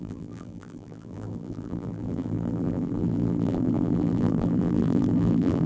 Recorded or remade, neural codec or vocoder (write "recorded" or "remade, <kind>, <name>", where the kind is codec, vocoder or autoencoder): remade, vocoder, BigVGAN v2